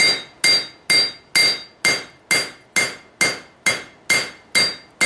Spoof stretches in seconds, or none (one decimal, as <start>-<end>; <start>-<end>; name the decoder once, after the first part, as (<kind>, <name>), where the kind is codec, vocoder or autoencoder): none